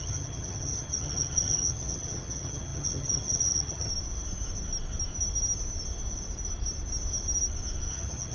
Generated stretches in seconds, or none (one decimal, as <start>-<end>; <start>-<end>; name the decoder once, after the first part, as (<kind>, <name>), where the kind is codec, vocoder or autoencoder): 0.0-3.9 (vocoder, HiFi-GAN); 7.9-8.3